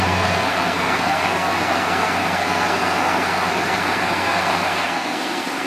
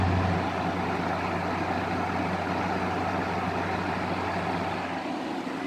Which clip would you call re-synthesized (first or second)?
first